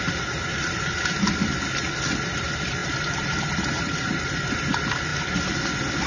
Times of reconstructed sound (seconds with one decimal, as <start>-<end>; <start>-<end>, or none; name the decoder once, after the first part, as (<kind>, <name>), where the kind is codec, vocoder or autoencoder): 0.5-1.3 (vocoder, BigVGAN v2); 2.8-4.0